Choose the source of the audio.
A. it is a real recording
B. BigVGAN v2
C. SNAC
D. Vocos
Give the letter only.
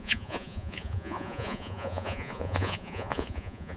D